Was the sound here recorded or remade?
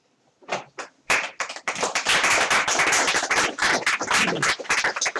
remade